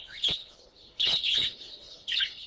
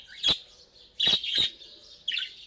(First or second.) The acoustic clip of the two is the second